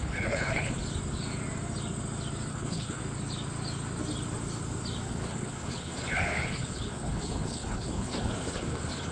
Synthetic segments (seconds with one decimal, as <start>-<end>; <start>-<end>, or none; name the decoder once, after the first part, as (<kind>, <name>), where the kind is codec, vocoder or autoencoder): 0.0-0.8 (codec, HILCodec); 2.5-3.0; 5.1-9.1